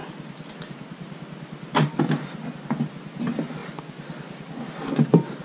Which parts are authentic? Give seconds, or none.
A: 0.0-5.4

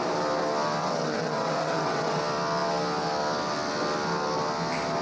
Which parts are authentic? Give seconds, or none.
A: 0.0-0.8; 2.2-5.0

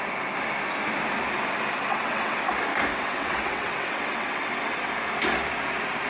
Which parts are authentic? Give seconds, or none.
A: 0.0-1.9; 2.4-2.9; 4.9-6.1

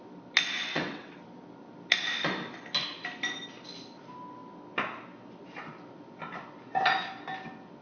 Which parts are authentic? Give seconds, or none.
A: 0.0-0.7; 1.2-7.8

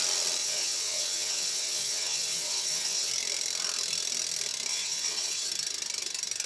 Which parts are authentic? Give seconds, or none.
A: 0.0-0.4; 3.1-4.7; 5.5-6.5

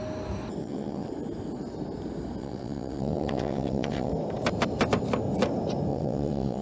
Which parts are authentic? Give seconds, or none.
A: 0.0-0.6; 1.1-2.4; 4.1-5.9